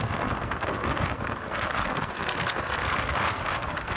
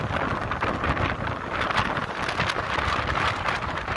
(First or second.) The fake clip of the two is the first